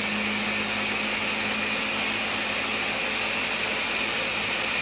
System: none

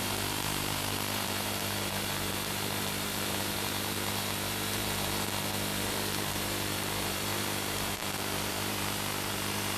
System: vocoder, BigVGAN v2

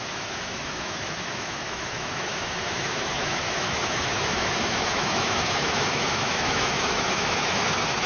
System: autoencoder, DAC-VAE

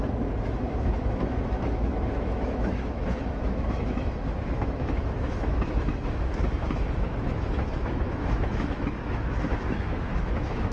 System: autoencoder, DAC-VAE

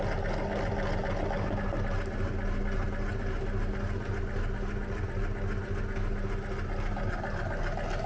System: none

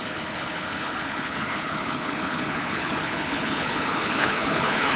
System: codec, HILCodec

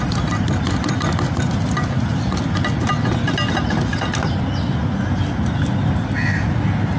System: none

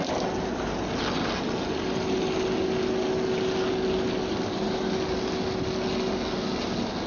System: none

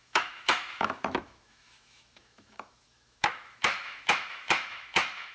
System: autoencoder, DAC-VAE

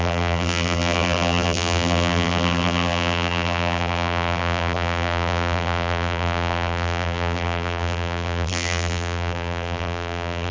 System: vocoder, BigVGAN v2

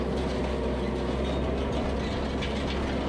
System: none